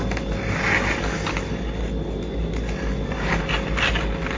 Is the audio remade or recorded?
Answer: recorded